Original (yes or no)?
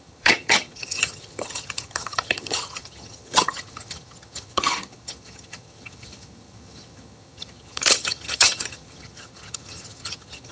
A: no